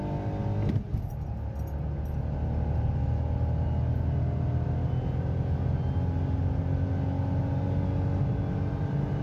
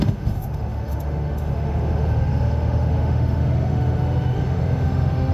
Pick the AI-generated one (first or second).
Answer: second